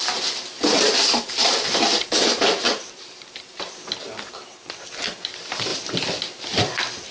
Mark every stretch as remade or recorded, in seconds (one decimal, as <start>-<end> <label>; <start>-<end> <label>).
0.0-2.0 recorded; 2.0-5.1 remade; 5.1-7.1 recorded